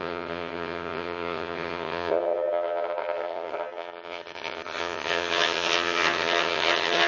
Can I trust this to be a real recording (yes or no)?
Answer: no